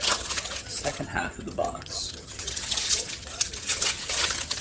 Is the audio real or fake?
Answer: fake